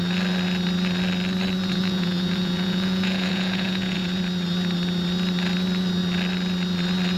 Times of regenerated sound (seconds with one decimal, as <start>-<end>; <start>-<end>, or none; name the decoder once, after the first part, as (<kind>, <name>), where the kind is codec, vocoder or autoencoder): 1.6-4.2 (vocoder, Vocos)

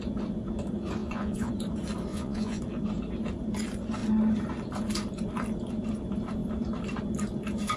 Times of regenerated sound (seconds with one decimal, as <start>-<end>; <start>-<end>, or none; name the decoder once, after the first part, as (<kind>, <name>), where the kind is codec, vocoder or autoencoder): 1.0-1.5 (vocoder, Vocos); 2.1-2.6